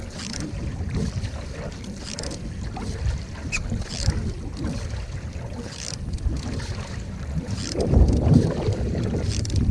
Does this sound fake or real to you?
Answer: fake